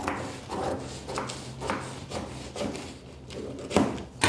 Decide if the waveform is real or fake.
real